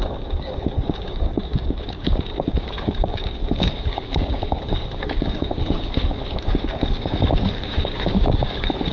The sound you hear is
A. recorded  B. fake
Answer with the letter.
B